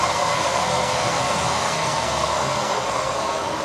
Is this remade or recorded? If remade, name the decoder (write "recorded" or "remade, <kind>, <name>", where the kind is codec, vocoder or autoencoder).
remade, codec, SNAC